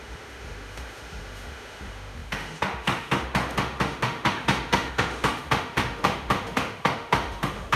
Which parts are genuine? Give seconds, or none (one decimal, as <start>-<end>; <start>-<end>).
none